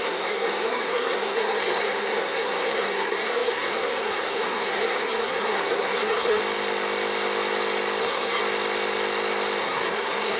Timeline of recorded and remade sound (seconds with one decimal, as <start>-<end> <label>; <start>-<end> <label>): 0.0-6.4 remade; 6.4-8.0 recorded; 8.0-8.4 remade; 8.4-9.6 recorded; 9.6-10.4 remade